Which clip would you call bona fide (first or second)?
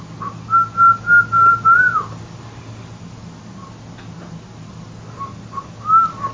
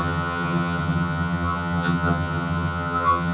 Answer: first